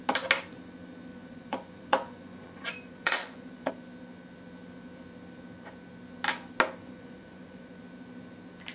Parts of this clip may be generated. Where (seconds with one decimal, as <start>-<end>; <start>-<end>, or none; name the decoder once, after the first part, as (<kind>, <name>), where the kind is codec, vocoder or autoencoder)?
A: 1.1-3.7 (vocoder, Vocos); 6.8-7.8